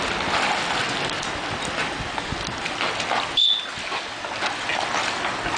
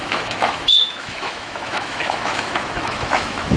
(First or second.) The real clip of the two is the first